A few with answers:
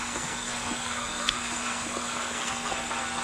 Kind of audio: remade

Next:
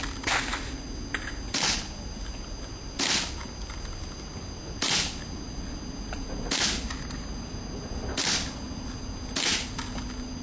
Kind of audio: recorded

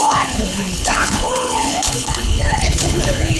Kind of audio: remade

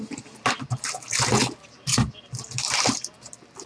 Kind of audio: recorded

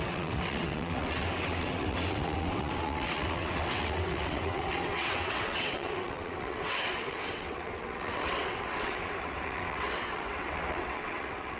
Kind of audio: remade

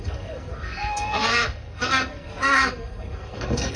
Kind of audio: remade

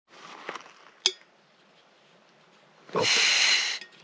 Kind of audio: recorded